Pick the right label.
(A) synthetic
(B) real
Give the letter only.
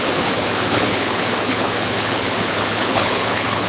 A